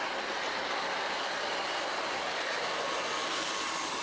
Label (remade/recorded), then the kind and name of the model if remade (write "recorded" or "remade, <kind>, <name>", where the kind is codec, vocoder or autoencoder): recorded